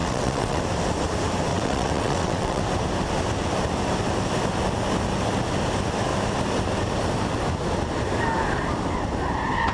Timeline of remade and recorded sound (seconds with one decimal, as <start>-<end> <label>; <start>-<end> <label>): 0.0-0.6 remade; 0.6-1.5 recorded; 1.5-2.6 remade; 2.6-9.7 recorded